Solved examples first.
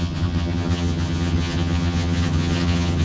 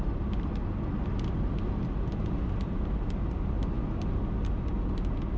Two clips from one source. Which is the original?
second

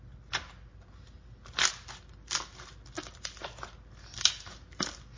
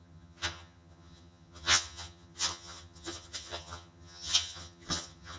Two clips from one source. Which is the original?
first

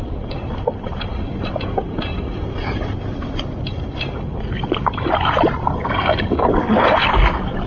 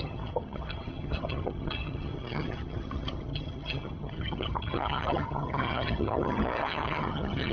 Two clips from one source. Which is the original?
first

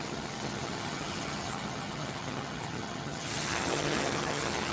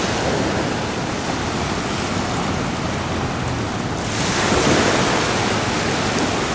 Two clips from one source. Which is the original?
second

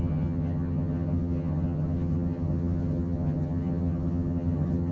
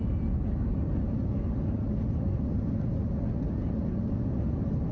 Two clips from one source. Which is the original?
second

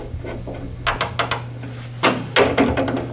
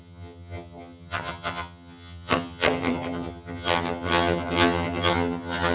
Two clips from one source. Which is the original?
first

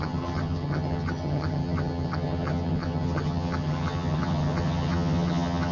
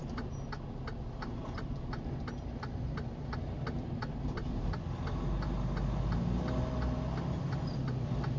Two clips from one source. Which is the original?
second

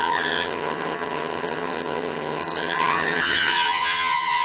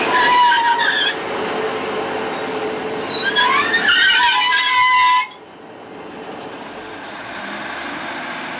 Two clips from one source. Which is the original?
second